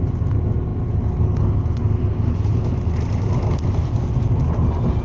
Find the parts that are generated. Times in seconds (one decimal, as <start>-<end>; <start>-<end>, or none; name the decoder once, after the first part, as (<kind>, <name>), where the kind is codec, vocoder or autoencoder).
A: none

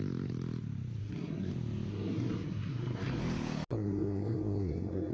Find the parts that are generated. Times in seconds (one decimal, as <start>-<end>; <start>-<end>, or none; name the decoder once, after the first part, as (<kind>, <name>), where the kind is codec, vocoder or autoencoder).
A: 1.0-1.5 (codec, SNAC); 1.9-3.2; 3.7-5.1

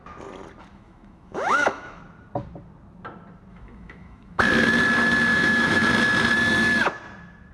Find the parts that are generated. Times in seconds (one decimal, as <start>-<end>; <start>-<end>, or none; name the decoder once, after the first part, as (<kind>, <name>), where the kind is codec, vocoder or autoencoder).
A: 0.7-2.0 (autoencoder, DAC-VAE); 3.5-4.4; 5.3-5.9

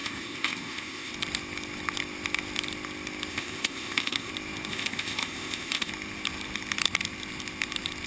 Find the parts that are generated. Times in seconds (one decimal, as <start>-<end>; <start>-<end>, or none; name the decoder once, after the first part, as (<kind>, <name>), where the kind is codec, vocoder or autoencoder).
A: 0.0-1.1 (codec, ZipCodec); 3.3-4.3; 4.7-5.9

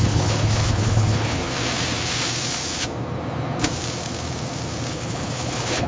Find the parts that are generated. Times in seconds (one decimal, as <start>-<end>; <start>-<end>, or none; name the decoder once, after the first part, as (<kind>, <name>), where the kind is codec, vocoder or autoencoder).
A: 0.0-1.4 (codec, HILCodec); 4.9-5.9